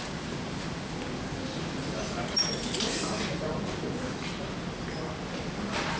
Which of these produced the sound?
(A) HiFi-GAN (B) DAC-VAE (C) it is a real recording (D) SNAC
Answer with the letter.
C